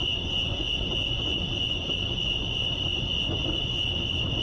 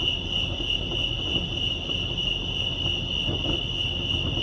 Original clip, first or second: second